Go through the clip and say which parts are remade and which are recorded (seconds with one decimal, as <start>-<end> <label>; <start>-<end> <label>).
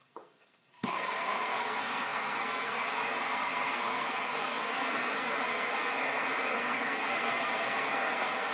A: 0.0-8.5 remade